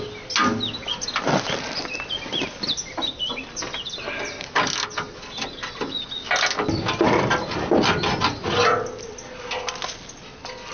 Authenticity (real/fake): real